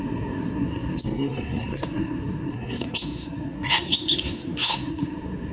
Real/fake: fake